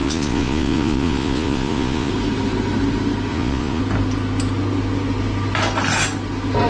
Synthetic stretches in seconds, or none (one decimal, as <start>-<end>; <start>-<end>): 0.0-2.1; 3.3-3.8